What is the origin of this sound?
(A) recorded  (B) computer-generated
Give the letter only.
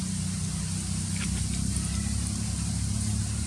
A